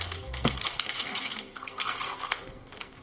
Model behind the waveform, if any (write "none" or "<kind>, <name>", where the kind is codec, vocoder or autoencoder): codec, SNAC